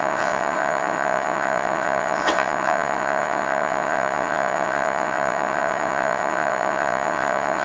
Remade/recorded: remade